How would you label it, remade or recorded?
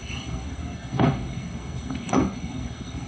remade